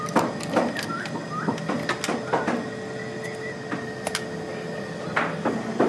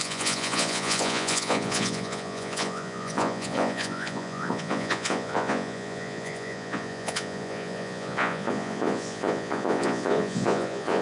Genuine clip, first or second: first